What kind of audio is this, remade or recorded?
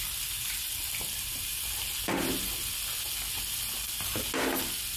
recorded